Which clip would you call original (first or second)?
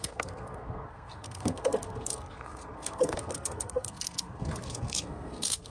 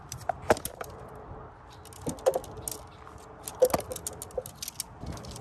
second